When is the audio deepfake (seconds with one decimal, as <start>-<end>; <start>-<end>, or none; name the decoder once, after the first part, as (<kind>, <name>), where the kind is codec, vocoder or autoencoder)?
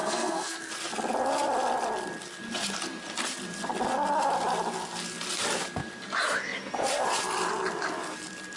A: 0.0-0.7 (codec, SNAC)